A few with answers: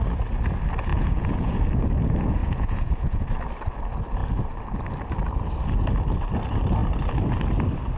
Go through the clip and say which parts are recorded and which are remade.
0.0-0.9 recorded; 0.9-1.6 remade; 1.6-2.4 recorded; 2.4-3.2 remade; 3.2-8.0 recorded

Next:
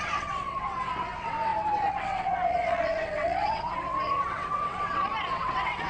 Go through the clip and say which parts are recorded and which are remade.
0.0-5.9 remade

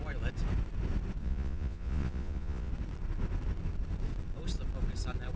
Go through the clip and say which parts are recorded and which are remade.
0.0-1.2 recorded; 1.2-2.7 remade; 2.7-5.4 recorded

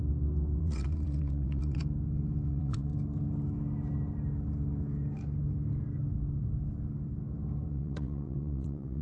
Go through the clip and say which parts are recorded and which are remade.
0.0-0.6 recorded; 0.6-1.8 remade; 1.8-2.5 recorded; 2.5-2.9 remade; 2.9-7.7 recorded; 7.7-9.0 remade

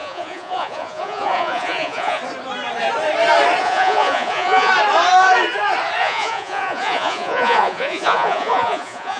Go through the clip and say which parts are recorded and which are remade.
0.0-2.2 remade; 2.2-3.6 recorded; 3.6-4.7 remade; 4.7-6.0 recorded; 6.0-9.2 remade